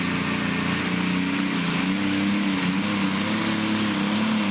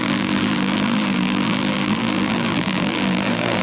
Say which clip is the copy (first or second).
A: second